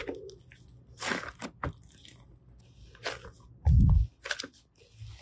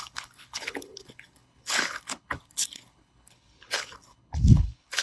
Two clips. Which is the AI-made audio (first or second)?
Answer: second